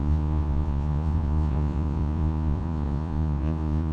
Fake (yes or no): yes